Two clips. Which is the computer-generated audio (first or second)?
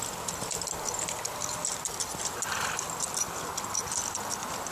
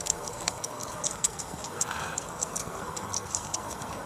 second